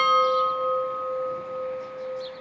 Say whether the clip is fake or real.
real